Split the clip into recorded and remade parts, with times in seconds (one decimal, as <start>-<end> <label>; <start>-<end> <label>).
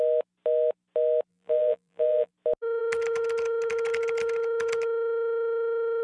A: 0.0-1.3 recorded; 1.3-2.3 remade; 2.3-6.0 recorded